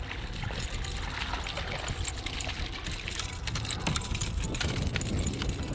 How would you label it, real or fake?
real